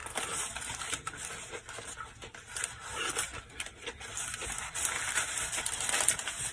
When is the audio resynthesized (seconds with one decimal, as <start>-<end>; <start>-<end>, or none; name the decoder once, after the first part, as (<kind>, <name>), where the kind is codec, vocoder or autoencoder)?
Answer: 0.0-0.5 (vocoder, BigVGAN v2)